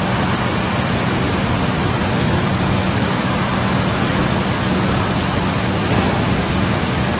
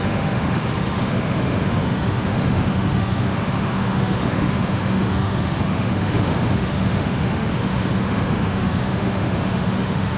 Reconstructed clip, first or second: second